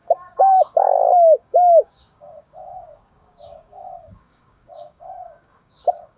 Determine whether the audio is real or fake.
fake